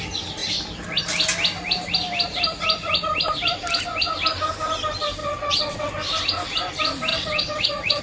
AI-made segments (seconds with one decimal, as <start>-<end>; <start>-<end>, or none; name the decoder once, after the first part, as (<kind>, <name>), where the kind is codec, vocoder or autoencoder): 5.2-5.9 (vocoder, WaveNeXt); 7.1-8.0